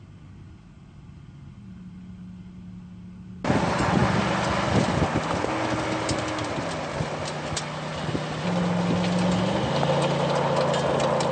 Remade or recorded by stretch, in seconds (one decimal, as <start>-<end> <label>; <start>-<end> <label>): 0.0-11.3 recorded